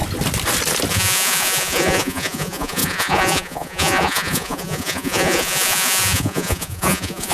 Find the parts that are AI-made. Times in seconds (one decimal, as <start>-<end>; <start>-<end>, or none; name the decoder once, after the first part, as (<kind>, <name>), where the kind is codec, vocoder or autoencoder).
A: 0.9-7.3 (vocoder, Vocos)